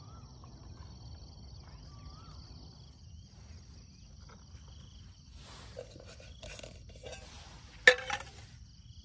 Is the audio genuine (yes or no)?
yes